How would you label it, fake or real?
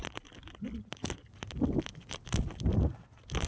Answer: real